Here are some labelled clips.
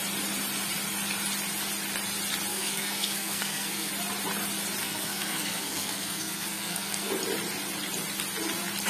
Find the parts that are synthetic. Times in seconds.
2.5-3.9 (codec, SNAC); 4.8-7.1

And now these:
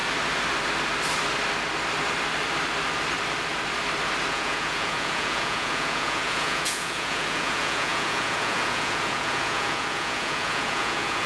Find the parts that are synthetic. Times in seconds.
4.3-11.3 (vocoder, Vocos)

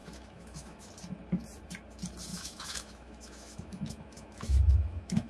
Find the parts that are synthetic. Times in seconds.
0.0-0.9 (autoencoder, DAC-VAE); 2.3-5.3

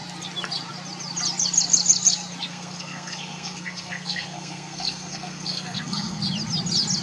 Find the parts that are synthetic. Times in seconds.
2.5-6.2 (codec, SNAC)

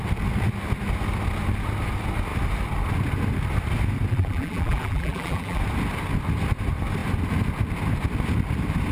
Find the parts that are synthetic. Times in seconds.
4.1-5.6 (vocoder, BigVGAN v2)

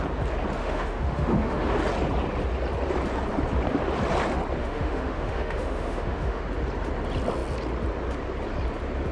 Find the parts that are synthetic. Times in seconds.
0.6-1.7 (autoencoder, DAC-VAE); 4.6-6.4

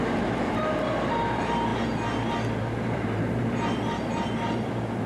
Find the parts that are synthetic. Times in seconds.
0.0-1.7 (vocoder, BigVGAN v2); 2.8-5.1